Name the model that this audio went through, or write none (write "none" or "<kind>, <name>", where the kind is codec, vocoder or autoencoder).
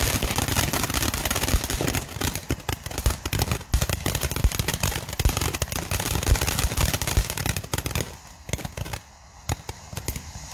none